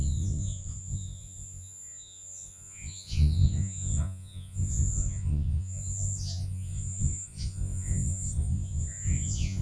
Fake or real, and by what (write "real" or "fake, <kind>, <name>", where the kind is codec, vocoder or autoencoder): fake, vocoder, Vocos